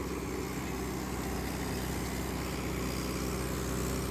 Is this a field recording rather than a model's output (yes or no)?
yes